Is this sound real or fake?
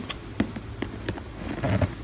real